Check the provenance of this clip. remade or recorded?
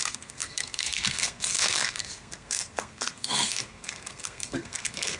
remade